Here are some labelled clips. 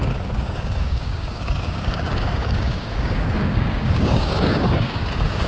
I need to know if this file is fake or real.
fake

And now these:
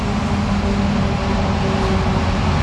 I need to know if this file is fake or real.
real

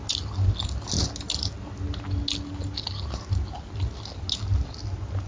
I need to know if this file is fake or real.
real